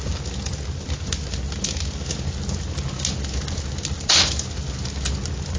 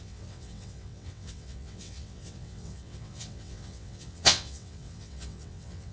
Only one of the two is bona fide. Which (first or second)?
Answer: first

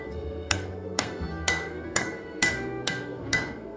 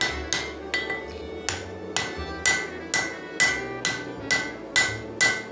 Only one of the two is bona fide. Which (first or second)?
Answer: second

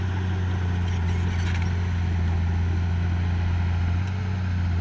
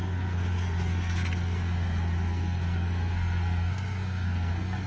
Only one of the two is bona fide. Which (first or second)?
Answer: first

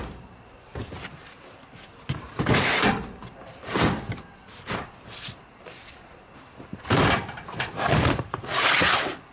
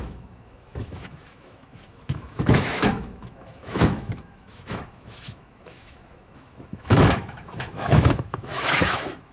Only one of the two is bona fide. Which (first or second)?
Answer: first